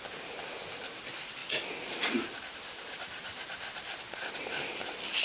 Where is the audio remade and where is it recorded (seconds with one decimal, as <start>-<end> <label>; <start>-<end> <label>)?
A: 0.0-1.4 recorded; 1.4-3.8 remade; 3.8-5.2 recorded